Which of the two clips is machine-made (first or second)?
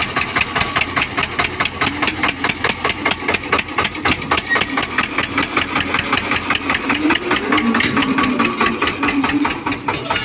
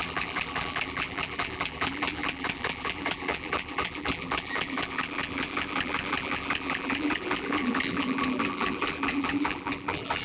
second